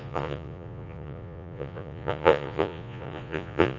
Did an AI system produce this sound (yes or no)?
yes